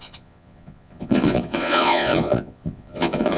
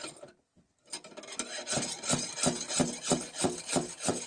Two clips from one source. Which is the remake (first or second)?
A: first